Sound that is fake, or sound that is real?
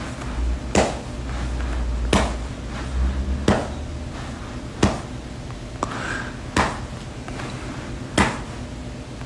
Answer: real